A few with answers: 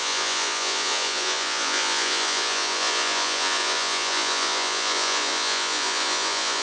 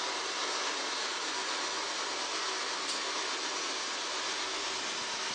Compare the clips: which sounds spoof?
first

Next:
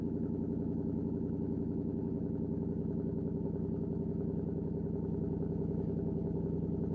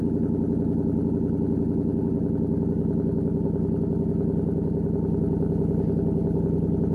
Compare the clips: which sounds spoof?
first